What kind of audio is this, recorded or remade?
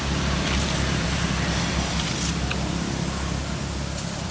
recorded